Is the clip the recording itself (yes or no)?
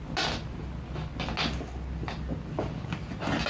yes